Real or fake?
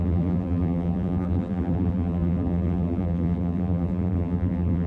fake